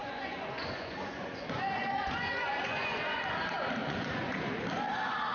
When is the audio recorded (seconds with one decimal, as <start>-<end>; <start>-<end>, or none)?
3.2-3.8; 4.5-5.3